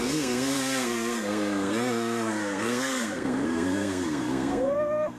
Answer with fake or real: fake